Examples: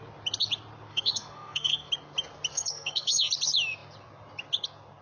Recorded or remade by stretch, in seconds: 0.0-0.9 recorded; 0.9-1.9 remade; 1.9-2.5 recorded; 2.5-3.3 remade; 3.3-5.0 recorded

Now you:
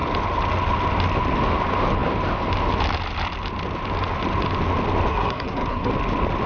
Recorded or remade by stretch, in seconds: 0.0-5.1 recorded; 5.1-5.9 remade; 5.9-6.5 recorded

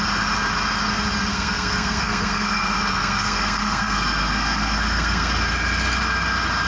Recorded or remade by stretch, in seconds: 0.0-1.3 recorded; 1.3-5.3 remade; 5.3-6.7 recorded

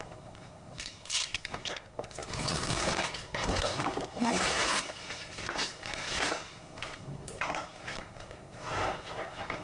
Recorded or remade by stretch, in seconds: 0.0-9.6 remade

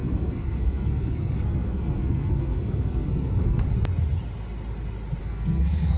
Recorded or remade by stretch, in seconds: 0.0-3.6 remade; 3.6-5.2 recorded; 5.2-6.0 remade

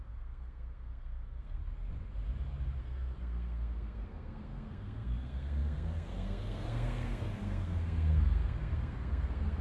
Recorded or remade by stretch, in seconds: 0.0-1.6 remade; 1.6-2.8 recorded; 2.8-9.6 remade

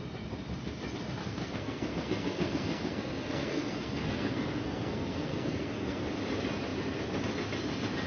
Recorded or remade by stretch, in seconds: 0.0-1.2 recorded; 1.2-6.1 remade; 6.1-8.1 recorded